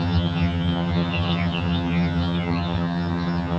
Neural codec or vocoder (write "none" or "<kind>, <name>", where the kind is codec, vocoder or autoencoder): vocoder, HiFi-GAN